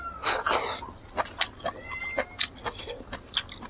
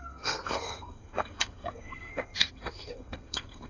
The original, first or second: first